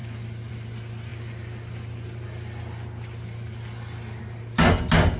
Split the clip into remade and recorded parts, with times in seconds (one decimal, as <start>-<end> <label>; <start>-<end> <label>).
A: 0.0-5.2 recorded